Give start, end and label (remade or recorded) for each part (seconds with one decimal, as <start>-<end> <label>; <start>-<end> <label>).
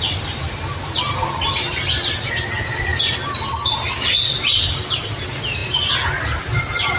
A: 0.0-7.0 recorded